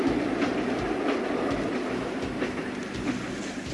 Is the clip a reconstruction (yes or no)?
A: no